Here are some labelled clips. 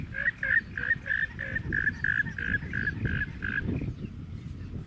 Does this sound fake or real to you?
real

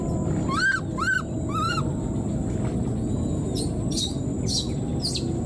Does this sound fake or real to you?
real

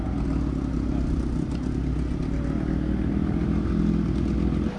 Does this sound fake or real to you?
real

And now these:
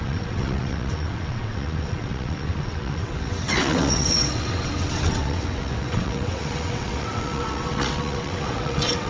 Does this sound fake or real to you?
fake